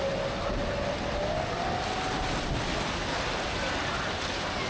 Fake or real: real